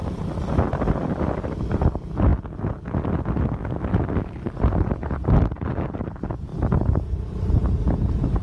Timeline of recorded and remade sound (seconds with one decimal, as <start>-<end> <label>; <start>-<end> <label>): 0.0-8.4 recorded